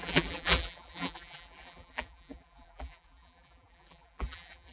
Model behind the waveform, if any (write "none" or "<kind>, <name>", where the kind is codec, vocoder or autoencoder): vocoder, BigVGAN v2